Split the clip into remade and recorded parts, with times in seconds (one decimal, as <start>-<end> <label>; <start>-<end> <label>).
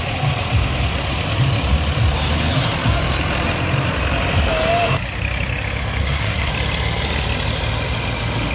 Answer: 0.0-6.0 recorded; 6.0-6.5 remade; 6.5-8.5 recorded